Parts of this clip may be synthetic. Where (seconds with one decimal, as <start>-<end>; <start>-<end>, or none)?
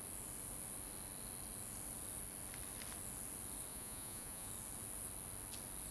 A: 3.7-4.5